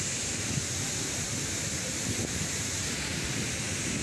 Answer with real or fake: fake